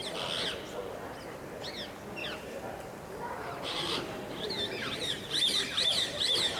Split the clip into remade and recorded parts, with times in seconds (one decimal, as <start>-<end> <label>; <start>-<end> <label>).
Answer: 0.0-2.2 recorded; 2.2-6.6 remade